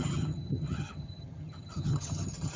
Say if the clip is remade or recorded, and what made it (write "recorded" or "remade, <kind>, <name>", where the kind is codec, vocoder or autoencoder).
remade, vocoder, HiFi-GAN